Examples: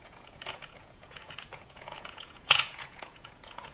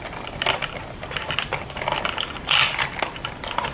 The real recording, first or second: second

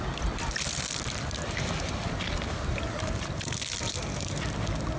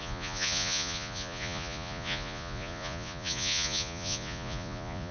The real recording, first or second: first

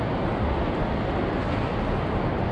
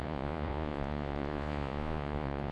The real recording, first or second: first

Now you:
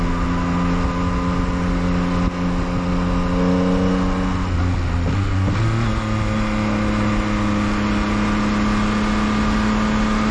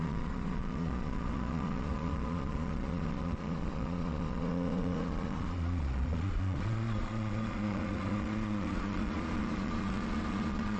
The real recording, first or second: first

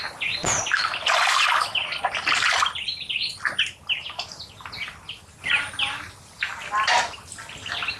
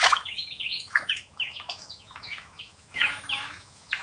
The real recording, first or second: first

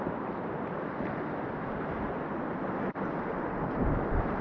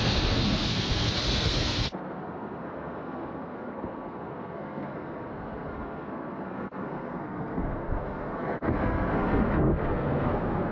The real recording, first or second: first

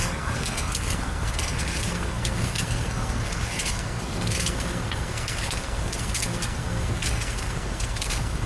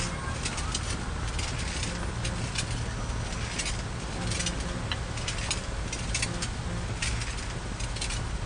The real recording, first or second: second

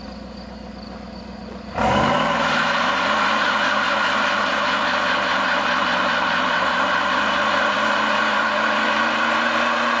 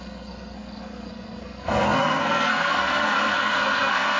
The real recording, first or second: first